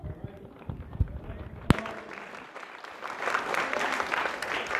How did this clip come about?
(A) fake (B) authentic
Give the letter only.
B